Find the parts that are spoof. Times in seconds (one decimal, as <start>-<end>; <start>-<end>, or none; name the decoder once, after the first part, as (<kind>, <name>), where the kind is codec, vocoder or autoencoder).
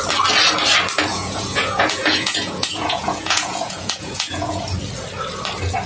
1.1-4.6 (vocoder, Vocos)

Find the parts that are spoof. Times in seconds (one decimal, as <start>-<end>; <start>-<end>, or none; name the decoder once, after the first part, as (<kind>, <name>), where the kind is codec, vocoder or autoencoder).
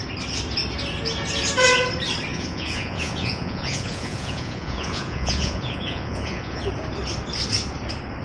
2.3-6.6 (vocoder, Vocos)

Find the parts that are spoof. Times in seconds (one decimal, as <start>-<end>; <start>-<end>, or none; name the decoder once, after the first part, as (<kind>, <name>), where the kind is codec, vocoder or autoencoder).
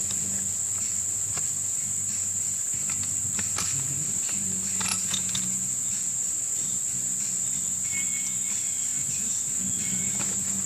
4.9-5.9 (vocoder, Vocos)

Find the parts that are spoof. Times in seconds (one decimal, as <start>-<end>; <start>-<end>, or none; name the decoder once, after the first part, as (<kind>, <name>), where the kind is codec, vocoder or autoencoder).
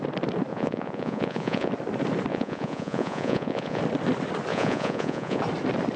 0.5-1.7 (vocoder, Vocos); 2.3-3.8; 4.5-5.4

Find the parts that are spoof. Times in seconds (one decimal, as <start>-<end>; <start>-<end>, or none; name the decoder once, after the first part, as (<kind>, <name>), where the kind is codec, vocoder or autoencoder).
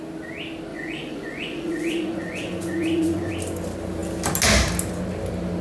0.7-3.3 (vocoder, Vocos)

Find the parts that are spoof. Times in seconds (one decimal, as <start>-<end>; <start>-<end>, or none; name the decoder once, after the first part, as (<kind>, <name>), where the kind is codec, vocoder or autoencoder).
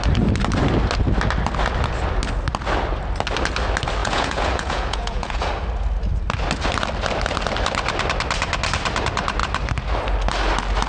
4.0-5.5 (vocoder, Vocos)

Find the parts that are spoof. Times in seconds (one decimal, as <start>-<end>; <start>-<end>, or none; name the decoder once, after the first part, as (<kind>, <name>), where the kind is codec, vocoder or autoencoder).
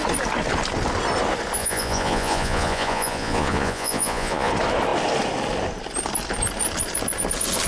1.6-4.5 (vocoder, Vocos)